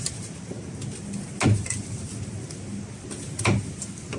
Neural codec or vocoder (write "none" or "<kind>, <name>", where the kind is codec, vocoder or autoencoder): none